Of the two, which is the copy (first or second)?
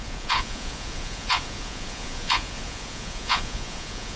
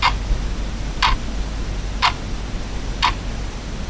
first